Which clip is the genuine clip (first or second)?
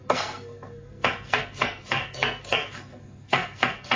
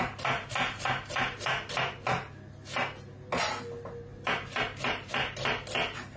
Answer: second